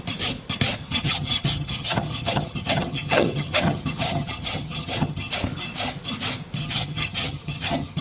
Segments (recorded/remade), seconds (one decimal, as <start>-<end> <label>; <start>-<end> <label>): 0.0-0.8 recorded; 0.8-5.3 remade; 5.3-6.6 recorded; 6.6-8.0 remade